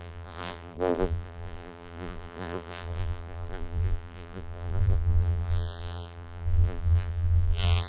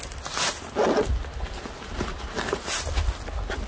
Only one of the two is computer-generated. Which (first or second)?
first